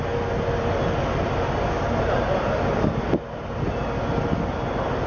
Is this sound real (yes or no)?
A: yes